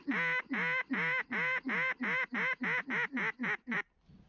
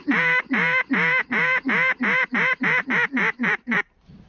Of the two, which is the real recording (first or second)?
first